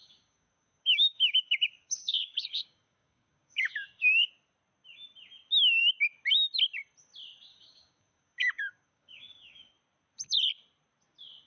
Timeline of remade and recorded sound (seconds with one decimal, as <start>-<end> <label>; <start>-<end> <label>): 0.0-4.3 remade; 4.3-7.5 recorded; 7.5-9.7 remade; 9.7-11.5 recorded